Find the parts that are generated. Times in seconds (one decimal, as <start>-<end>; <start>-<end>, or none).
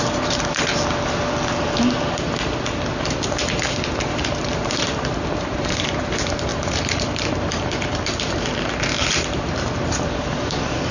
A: 0.0-0.7; 3.1-10.9